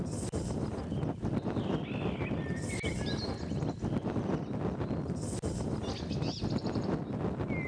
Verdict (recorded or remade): recorded